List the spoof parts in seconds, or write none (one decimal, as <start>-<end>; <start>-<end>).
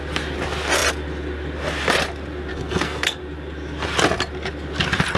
2.5-3.2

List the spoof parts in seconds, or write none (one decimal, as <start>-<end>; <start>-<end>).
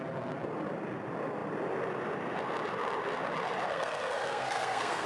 3.7-5.1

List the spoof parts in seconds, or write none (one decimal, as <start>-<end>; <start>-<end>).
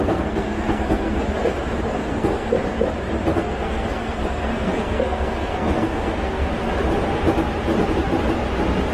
0.0-1.2; 1.9-2.5; 3.3-6.5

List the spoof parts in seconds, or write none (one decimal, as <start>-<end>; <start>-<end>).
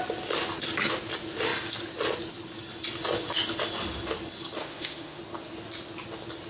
4.6-5.2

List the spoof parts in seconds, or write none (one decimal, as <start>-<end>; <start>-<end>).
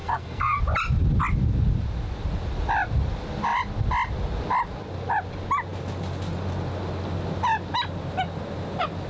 0.0-0.6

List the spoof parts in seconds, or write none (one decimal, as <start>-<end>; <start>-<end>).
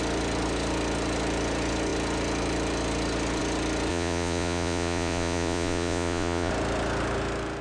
3.9-6.5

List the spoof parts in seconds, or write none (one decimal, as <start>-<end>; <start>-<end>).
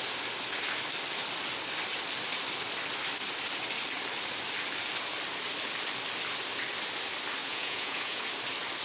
7.4-8.2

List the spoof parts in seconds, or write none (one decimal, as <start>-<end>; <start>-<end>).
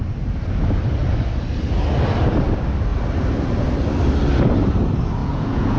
5.2-5.8